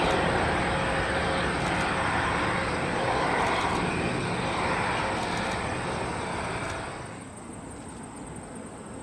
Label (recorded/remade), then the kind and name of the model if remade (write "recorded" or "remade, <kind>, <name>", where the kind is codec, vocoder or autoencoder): recorded